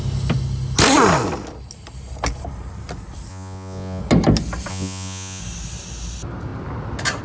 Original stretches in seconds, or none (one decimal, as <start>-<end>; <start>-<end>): 0.0-3.3; 4.0-4.7; 5.4-7.2